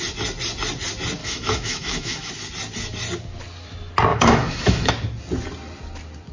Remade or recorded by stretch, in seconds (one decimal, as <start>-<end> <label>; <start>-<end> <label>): 0.0-1.2 recorded; 1.2-2.3 remade; 2.3-4.1 recorded; 4.1-4.9 remade; 4.9-6.3 recorded